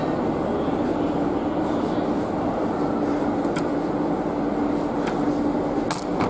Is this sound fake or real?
real